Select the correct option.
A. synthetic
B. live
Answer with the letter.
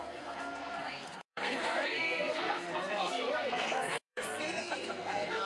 A